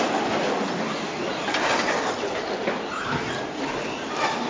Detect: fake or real real